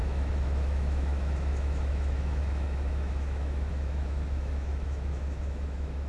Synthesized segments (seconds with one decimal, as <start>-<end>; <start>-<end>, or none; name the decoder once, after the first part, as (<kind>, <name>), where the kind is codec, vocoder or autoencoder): 0.0-6.1 (autoencoder, DAC-VAE)